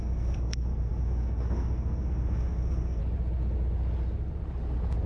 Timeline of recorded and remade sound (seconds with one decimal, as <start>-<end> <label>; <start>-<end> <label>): 0.0-3.0 remade; 3.0-5.1 recorded